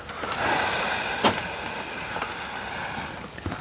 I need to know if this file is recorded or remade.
recorded